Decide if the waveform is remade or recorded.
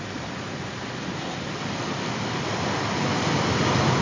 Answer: recorded